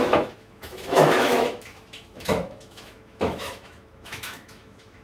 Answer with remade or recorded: remade